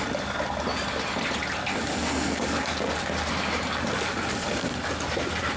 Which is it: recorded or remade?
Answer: recorded